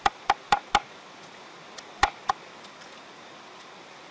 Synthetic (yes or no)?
no